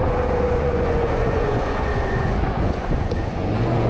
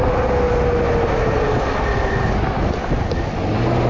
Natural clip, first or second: second